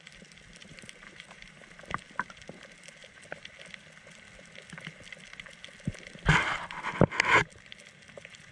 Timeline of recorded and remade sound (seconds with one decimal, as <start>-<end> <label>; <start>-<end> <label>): 0.0-0.6 recorded; 0.6-1.7 remade; 1.7-8.5 recorded